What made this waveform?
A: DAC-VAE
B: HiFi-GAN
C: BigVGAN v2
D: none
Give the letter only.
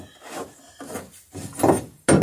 D